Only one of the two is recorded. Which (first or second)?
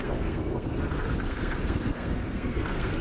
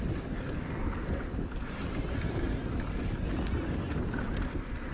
second